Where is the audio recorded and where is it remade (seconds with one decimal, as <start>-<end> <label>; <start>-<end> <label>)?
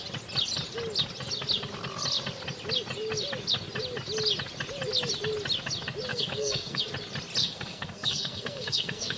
0.0-6.1 recorded; 6.1-6.8 remade; 6.8-7.4 recorded; 7.4-9.2 remade